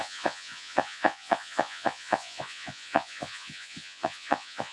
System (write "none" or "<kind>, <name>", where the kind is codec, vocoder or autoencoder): vocoder, Vocos